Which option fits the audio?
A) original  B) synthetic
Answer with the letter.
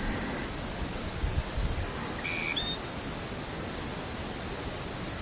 A